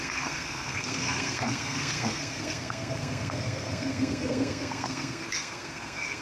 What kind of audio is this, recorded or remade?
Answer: remade